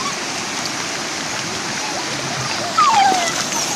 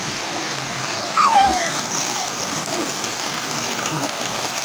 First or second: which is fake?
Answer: second